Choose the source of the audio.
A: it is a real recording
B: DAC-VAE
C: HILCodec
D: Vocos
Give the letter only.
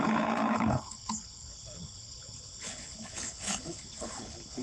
C